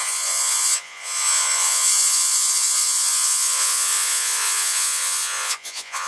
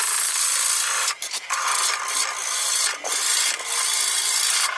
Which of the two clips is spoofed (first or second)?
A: first